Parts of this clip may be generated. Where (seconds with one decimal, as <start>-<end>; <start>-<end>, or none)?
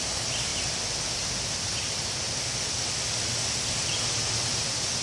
none